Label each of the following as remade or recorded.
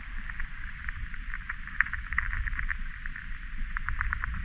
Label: recorded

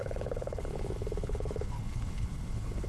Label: remade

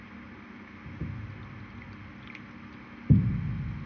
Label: recorded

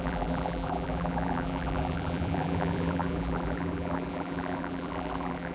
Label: remade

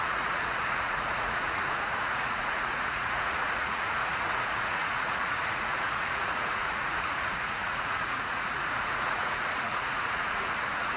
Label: remade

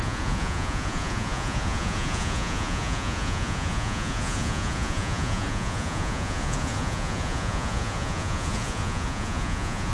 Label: remade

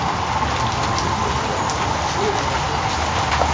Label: recorded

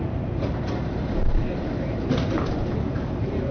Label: remade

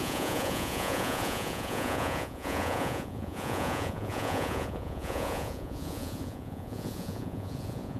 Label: remade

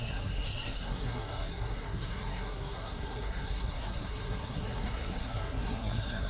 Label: remade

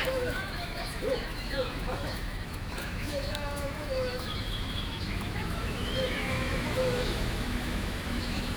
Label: remade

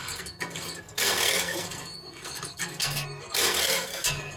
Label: remade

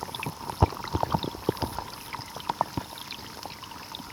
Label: recorded